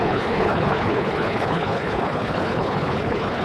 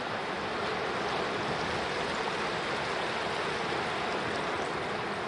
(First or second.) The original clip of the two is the second